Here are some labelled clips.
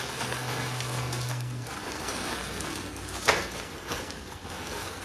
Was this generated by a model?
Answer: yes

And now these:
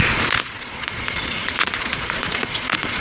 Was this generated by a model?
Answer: yes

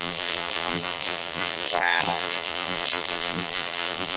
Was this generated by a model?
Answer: yes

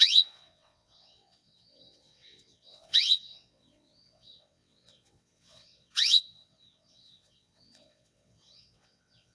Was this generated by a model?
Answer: yes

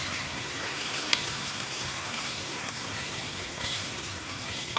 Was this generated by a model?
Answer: yes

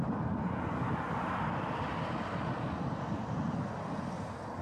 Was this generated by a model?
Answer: no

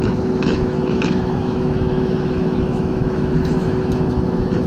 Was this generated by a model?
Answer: yes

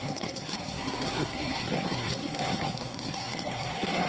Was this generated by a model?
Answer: yes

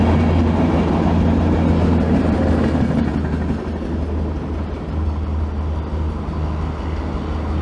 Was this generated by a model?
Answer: no